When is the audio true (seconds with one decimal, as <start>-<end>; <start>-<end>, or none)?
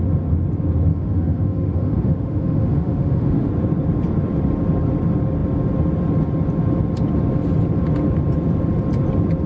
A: 0.0-0.9; 3.5-9.5